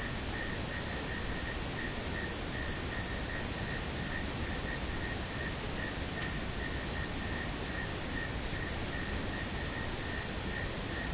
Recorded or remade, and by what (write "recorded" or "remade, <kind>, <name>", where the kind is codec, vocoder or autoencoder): recorded